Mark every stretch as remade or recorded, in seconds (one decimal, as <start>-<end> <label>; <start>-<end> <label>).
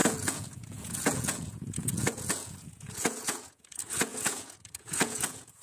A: 0.0-5.6 remade